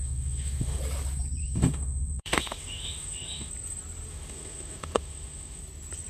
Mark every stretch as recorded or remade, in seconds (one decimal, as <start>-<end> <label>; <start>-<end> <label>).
0.0-0.8 remade; 0.8-1.4 recorded; 1.4-3.5 remade; 3.5-4.1 recorded; 4.1-5.6 remade; 5.6-6.1 recorded